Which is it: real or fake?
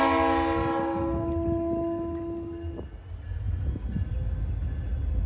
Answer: real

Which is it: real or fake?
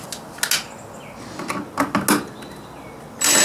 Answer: real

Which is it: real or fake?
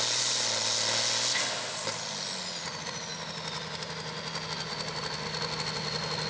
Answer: real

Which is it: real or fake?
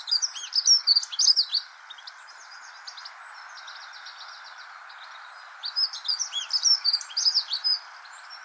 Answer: real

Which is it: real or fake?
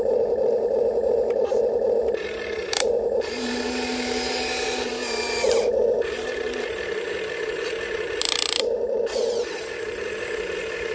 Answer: fake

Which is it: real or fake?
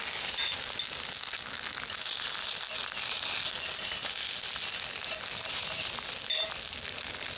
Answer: real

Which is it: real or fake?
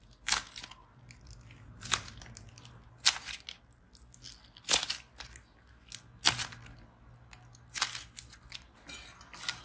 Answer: real